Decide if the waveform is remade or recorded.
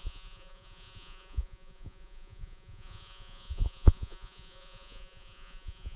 remade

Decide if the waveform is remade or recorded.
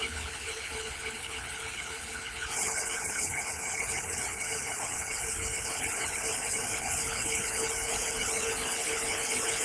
remade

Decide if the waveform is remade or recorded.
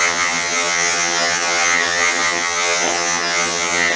remade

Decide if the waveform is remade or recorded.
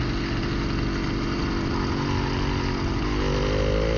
recorded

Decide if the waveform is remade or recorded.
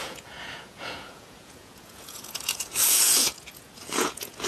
remade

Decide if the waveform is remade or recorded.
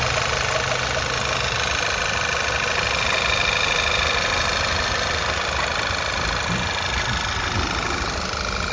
recorded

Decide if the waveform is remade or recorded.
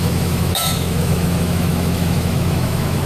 remade